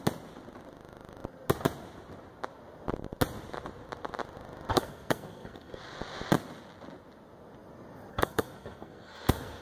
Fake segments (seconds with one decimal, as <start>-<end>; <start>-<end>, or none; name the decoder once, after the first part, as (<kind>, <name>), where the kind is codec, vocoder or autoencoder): 4.7-5.8 (codec, SNAC); 8.1-9.6